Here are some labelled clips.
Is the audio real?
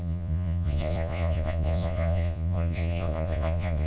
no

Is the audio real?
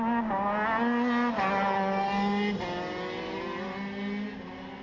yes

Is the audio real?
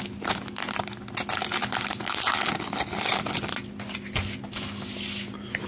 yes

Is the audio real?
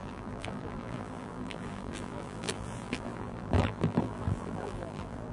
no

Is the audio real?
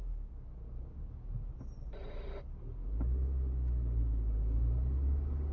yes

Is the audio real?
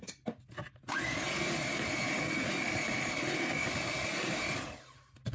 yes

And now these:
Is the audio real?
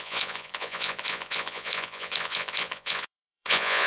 no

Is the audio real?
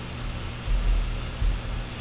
yes